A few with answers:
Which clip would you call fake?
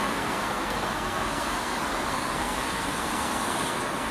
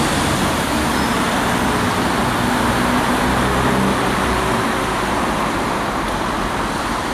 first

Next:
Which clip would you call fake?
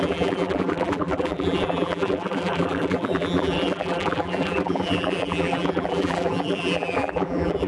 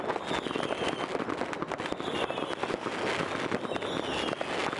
first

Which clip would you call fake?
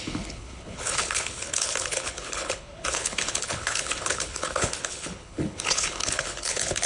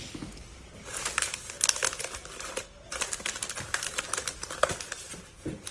first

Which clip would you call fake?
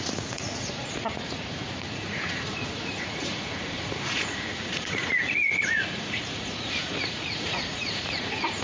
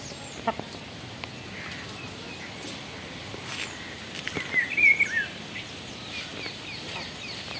first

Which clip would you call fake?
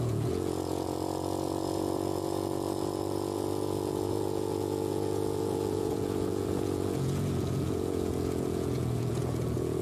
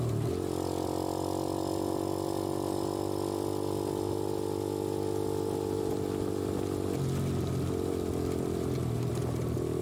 first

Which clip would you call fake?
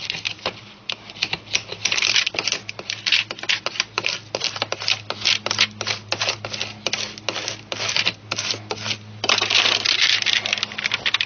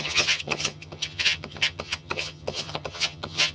second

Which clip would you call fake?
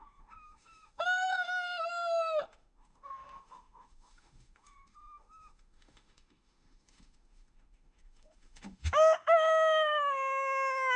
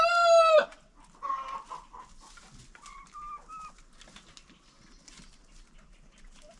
first